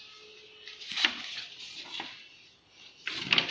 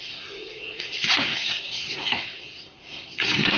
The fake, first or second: second